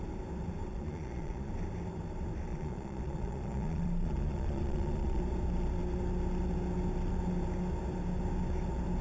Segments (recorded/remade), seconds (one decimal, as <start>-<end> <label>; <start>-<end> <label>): 0.0-0.7 recorded; 0.7-1.5 remade; 1.5-2.5 recorded; 2.5-5.2 remade; 5.2-9.0 recorded